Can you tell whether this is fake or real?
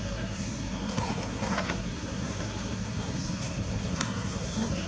fake